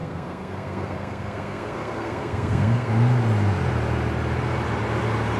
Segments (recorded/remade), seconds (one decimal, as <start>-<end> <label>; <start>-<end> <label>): 0.0-2.9 remade; 2.9-5.4 recorded